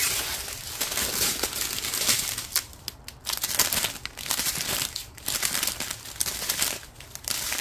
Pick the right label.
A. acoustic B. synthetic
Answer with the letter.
A